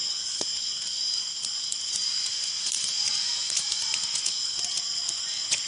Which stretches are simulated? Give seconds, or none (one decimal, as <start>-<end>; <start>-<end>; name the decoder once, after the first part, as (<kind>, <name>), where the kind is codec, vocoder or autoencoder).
0.0-5.7 (vocoder, Vocos)